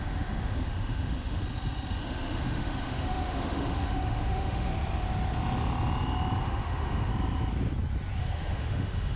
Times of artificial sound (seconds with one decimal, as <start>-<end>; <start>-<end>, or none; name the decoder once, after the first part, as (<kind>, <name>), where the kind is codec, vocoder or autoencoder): 0.0-1.4 (autoencoder, DAC-VAE); 2.0-4.7; 6.4-7.1; 8.2-9.2